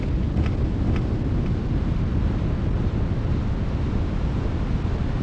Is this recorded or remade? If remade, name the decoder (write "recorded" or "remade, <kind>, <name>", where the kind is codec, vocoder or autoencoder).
recorded